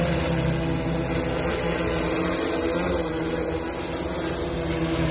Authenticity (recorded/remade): recorded